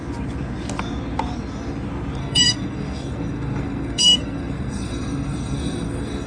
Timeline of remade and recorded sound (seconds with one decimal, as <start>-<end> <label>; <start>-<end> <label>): 0.0-2.2 recorded; 2.2-6.3 remade